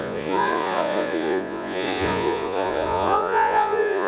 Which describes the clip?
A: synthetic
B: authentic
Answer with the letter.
A